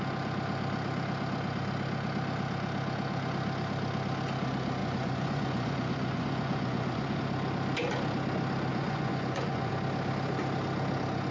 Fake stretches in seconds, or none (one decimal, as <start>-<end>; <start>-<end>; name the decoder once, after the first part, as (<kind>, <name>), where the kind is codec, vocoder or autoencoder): 4.8-7.2 (vocoder, Vocos); 8.7-9.7